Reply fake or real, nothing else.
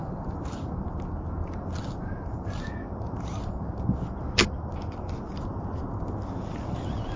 real